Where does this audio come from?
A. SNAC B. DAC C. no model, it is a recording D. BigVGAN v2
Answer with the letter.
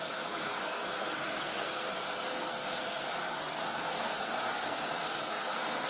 A